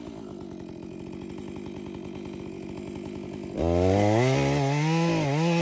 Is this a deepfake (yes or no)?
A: no